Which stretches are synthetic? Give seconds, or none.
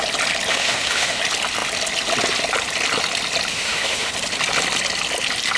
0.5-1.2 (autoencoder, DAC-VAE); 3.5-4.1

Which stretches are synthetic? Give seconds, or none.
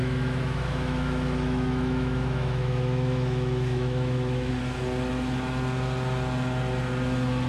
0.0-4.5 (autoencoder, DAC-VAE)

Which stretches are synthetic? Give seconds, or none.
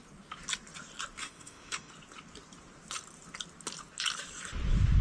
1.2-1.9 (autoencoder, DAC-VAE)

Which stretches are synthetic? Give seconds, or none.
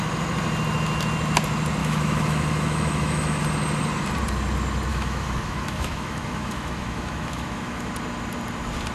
1.8-3.4 (autoencoder, DAC-VAE); 4.9-7.9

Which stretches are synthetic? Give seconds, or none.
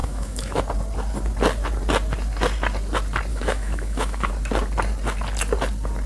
0.0-0.6 (autoencoder, DAC-VAE); 3.3-4.3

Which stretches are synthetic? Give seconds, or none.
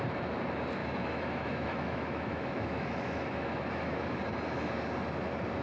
0.8-4.2 (autoencoder, DAC-VAE)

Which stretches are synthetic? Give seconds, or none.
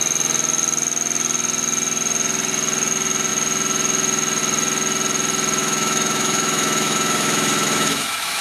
5.6-8.4 (autoencoder, DAC-VAE)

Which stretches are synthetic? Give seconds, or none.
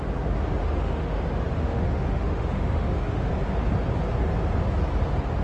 0.6-1.2 (autoencoder, DAC-VAE); 1.6-3.3